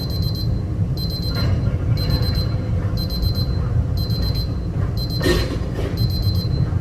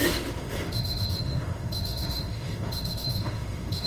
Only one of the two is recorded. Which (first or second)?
first